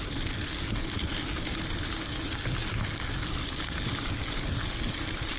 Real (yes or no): yes